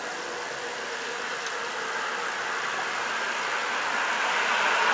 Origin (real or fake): real